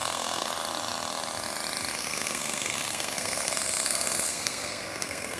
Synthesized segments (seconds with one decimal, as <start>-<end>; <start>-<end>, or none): 0.0-0.5; 2.0-5.4